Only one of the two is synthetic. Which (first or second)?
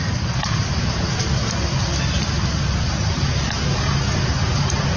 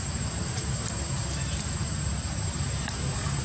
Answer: second